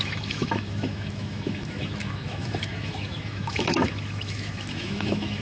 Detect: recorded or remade remade